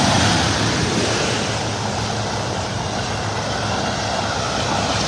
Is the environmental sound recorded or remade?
recorded